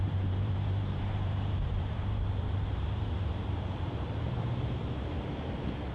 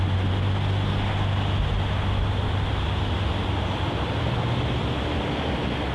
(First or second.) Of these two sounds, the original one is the second